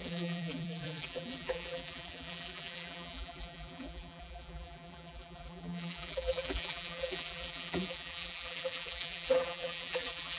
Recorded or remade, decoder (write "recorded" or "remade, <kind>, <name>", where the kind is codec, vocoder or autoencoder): remade, vocoder, BigVGAN v2